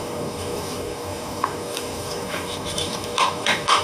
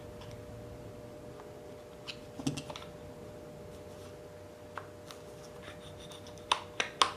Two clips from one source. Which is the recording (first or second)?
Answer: second